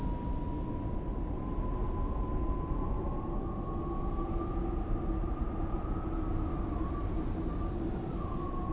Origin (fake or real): real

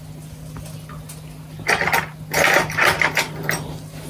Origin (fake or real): real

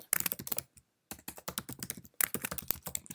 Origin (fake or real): real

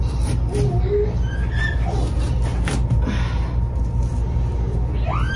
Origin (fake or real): real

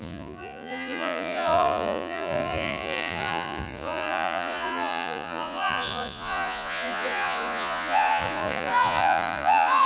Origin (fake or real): fake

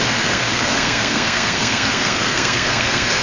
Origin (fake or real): fake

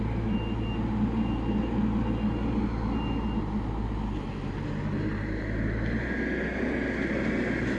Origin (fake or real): real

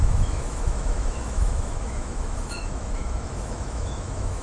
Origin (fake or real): fake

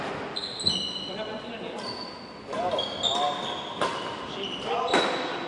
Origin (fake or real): real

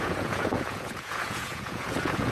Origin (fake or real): fake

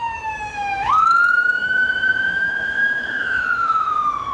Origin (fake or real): fake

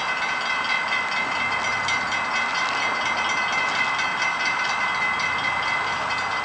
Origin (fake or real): real